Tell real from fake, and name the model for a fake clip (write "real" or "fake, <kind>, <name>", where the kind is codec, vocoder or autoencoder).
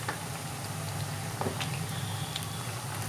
fake, vocoder, BigVGAN v2